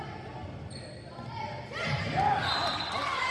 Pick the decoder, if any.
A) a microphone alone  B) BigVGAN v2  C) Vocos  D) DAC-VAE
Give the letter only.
A